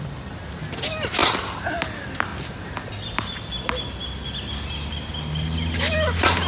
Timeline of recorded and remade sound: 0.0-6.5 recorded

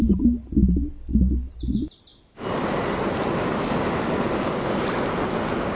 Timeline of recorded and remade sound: 0.0-5.7 recorded

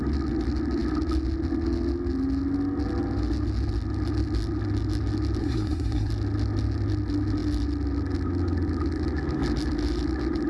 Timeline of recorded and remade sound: 0.0-5.4 recorded; 5.4-6.1 remade; 6.1-10.5 recorded

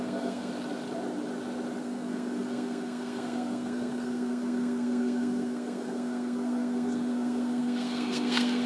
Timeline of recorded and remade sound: 0.0-0.5 remade; 0.5-1.8 recorded; 1.8-8.7 remade